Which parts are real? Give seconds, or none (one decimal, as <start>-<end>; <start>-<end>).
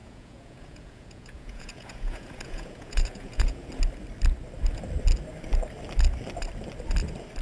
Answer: 3.7-7.4